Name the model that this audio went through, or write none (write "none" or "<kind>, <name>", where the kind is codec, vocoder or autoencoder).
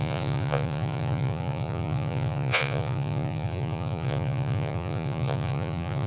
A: vocoder, Vocos